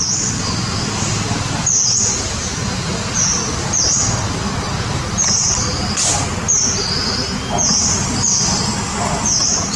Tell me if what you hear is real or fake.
real